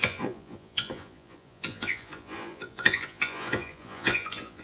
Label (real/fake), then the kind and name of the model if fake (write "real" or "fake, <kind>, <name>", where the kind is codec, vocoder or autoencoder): fake, vocoder, Vocos